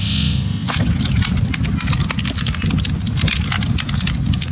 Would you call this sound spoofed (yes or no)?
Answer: no